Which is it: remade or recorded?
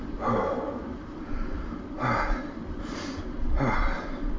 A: recorded